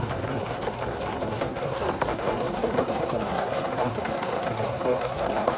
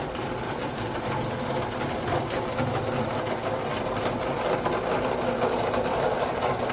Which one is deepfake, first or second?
first